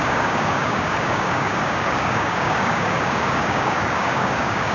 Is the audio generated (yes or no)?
yes